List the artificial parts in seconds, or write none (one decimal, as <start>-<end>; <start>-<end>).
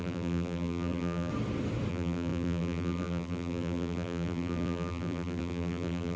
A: 0.0-1.3; 1.9-6.2